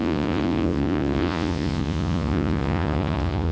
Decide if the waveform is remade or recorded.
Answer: remade